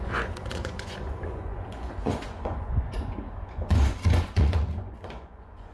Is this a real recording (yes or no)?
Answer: no